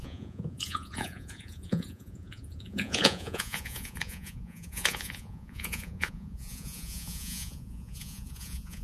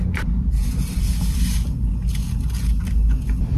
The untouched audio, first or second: second